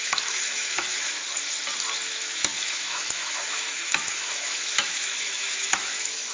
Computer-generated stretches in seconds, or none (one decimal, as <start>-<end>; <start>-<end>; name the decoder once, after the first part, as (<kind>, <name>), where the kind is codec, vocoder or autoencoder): 0.0-1.2 (autoencoder, DAC-VAE); 2.1-6.3